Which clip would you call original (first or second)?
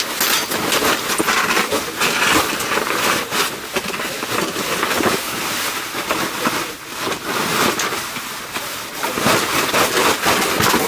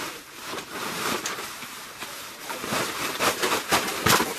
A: first